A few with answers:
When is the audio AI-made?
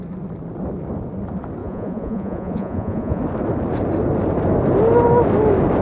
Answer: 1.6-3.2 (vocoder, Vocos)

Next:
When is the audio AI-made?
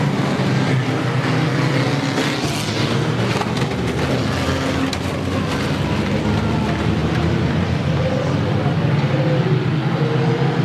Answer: 7.0-8.0 (vocoder, BigVGAN v2)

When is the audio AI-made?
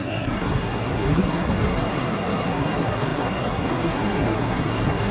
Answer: 0.0-5.1 (codec, SNAC)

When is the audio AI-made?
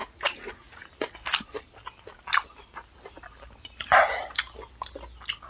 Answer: 0.0-0.9 (vocoder, Vocos)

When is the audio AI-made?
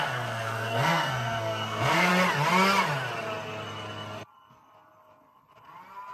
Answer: 0.0-2.1 (codec, SNAC)